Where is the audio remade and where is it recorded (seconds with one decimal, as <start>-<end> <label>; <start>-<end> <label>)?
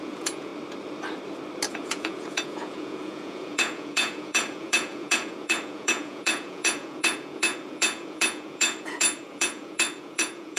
0.0-0.5 remade; 0.5-1.7 recorded; 1.7-10.6 remade